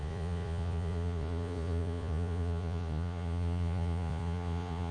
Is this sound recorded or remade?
remade